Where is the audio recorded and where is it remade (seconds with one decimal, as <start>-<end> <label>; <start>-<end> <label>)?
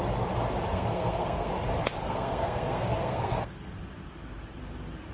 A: 0.0-0.7 recorded; 0.7-1.5 remade; 1.5-2.0 recorded; 2.0-3.7 remade; 3.7-5.1 recorded